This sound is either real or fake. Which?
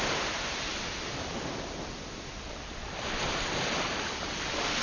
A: real